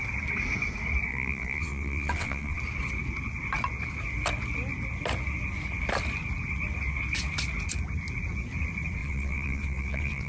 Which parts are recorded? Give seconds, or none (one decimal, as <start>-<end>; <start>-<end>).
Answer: 0.0-1.1; 2.6-9.0